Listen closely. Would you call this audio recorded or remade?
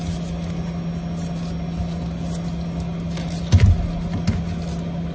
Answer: recorded